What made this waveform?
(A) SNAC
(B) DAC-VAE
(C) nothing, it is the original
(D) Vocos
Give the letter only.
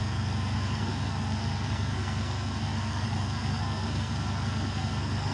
A